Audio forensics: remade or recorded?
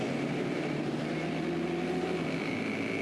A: recorded